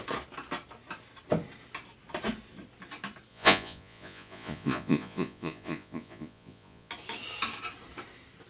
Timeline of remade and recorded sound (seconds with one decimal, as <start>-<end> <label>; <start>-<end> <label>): 0.0-3.3 recorded; 3.3-6.9 remade; 6.9-8.5 recorded